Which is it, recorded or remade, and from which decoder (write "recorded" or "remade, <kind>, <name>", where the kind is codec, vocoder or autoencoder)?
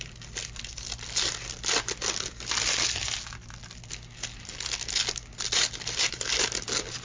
recorded